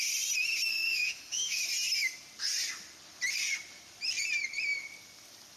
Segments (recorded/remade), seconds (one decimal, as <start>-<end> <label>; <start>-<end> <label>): 0.0-0.7 recorded; 0.7-1.6 remade; 1.6-5.6 recorded